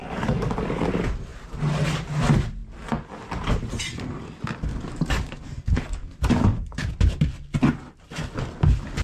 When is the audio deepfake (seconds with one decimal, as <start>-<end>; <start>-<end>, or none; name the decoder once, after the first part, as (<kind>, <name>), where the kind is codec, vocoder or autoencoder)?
0.0-0.9 (codec, DAC); 4.7-6.9